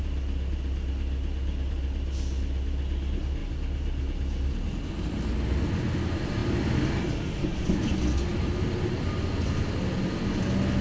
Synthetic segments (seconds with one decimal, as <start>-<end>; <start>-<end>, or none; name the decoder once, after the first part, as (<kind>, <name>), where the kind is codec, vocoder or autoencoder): none